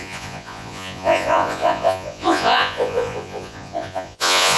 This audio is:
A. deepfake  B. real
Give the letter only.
A